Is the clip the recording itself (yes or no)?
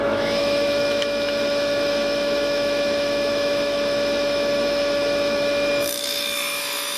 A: no